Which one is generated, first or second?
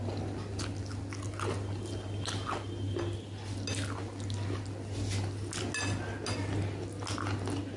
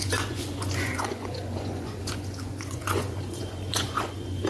second